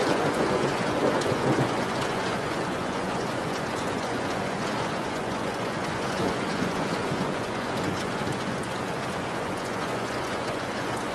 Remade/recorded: remade